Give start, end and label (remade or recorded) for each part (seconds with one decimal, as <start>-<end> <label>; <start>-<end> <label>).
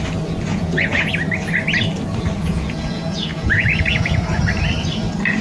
0.0-0.5 recorded; 0.5-1.1 remade; 1.1-2.4 recorded; 2.4-4.4 remade; 4.4-5.4 recorded